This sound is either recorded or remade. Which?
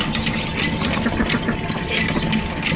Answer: recorded